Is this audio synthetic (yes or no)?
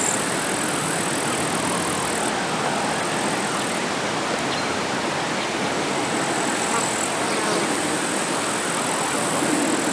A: no